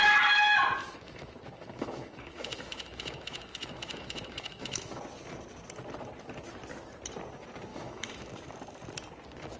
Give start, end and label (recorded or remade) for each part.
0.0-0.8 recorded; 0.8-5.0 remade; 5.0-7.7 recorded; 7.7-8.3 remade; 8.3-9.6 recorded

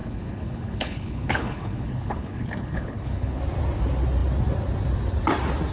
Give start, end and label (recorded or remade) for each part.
0.0-3.4 remade; 3.4-5.7 recorded

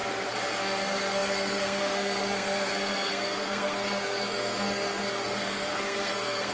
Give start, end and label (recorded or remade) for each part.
0.0-0.6 recorded; 0.6-6.5 remade